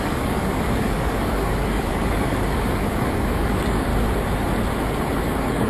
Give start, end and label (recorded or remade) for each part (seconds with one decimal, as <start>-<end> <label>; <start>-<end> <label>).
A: 0.0-3.9 remade; 3.9-5.2 recorded; 5.2-5.7 remade